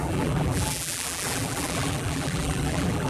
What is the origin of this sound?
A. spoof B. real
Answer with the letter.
A